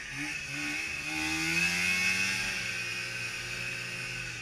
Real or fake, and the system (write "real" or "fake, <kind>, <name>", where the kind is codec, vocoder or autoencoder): real